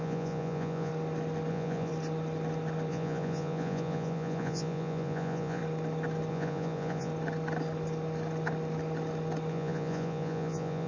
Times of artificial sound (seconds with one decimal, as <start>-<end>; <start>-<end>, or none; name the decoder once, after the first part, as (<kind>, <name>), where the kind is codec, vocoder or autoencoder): 0.0-0.9 (vocoder, Vocos); 1.5-1.9; 2.9-5.6; 6.3-7.1; 9.5-10.9